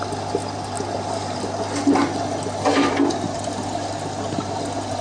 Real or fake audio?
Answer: real